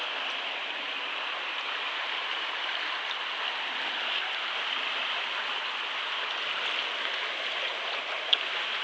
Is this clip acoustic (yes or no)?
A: yes